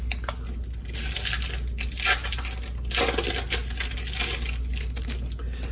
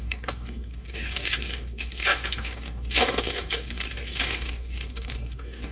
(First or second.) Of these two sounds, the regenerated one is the second